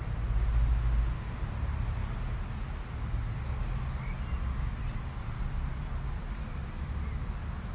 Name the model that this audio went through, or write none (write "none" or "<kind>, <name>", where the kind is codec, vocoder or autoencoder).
none